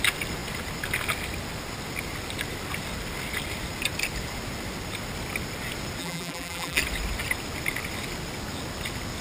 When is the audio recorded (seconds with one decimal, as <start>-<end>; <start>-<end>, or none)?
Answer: 0.0-6.0; 6.8-9.2